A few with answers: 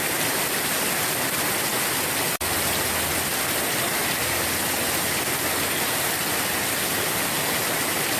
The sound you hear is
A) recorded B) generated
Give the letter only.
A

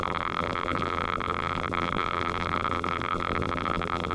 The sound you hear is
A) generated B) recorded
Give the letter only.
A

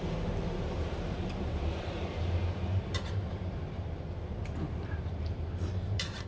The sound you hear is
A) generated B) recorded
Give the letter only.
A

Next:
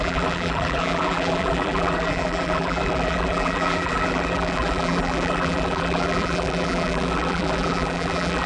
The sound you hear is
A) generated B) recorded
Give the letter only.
A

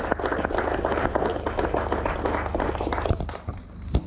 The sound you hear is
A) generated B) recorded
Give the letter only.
B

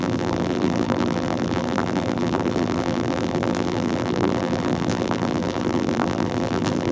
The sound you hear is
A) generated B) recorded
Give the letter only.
A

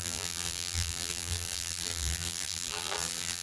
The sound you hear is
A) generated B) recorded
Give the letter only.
A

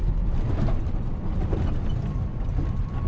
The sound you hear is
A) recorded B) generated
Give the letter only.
A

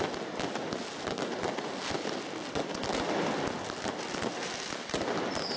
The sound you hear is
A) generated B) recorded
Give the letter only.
A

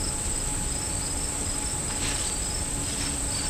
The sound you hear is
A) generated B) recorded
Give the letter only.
B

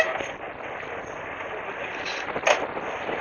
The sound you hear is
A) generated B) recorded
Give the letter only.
A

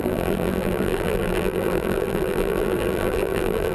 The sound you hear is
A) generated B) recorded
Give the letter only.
A